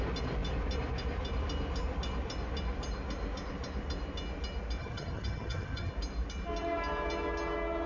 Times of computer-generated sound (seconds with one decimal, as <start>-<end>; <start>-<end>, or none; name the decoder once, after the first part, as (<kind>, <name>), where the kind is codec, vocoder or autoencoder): 4.8-5.9 (vocoder, HiFi-GAN)